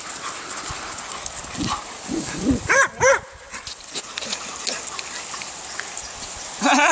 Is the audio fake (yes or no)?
no